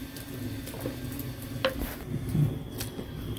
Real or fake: real